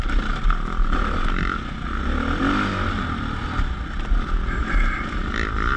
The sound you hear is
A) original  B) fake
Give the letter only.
A